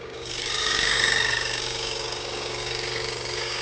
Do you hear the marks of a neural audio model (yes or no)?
yes